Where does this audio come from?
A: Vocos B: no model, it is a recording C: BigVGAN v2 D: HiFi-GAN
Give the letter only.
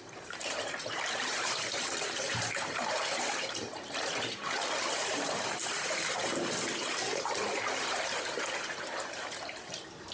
C